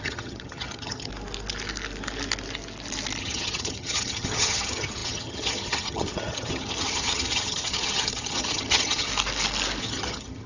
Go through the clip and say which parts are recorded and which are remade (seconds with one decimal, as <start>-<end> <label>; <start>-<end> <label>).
0.0-1.1 remade; 1.1-3.2 recorded; 3.2-9.1 remade; 9.1-9.8 recorded; 9.8-10.5 remade